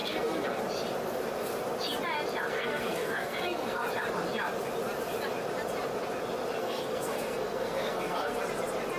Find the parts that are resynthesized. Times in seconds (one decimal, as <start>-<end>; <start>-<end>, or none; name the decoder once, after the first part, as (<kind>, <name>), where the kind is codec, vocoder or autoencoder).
0.0-0.6 (codec, SNAC); 2.5-3.8; 6.6-8.4